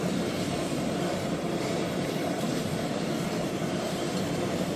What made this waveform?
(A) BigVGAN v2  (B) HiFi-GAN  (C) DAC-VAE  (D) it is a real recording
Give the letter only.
A